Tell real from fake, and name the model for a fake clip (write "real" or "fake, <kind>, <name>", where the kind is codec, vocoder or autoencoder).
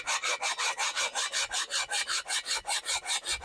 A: real